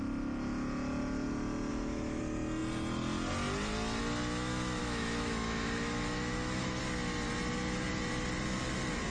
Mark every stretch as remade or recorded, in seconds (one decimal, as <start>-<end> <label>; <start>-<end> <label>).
0.0-1.7 recorded; 1.7-2.2 remade; 2.2-4.8 recorded; 4.8-6.8 remade; 6.8-9.1 recorded